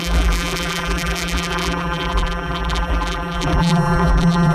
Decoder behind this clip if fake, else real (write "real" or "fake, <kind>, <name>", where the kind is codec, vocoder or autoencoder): fake, vocoder, BigVGAN v2